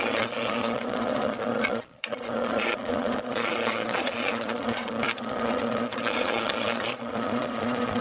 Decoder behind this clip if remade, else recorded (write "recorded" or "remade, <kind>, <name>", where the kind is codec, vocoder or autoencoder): remade, vocoder, Vocos